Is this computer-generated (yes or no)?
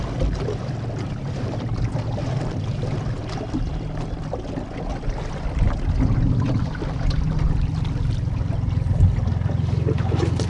no